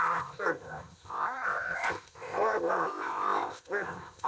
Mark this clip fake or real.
fake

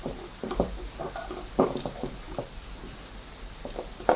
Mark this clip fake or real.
real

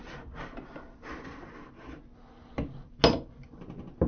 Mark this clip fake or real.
real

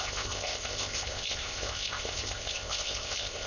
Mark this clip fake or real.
fake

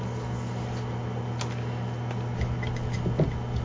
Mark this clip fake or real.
real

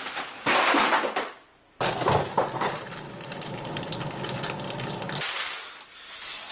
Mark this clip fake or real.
real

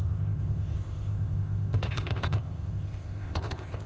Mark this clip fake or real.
fake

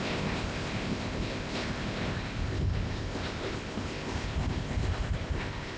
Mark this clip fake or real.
fake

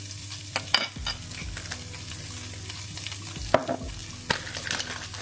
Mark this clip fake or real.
real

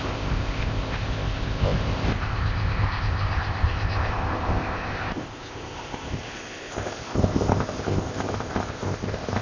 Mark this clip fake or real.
fake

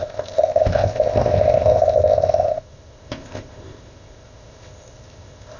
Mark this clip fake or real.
fake